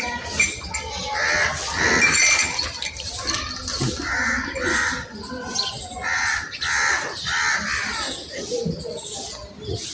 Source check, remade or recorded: recorded